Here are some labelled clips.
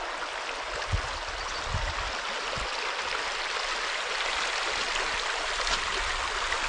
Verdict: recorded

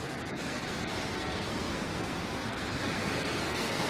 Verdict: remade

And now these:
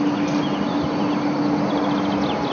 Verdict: recorded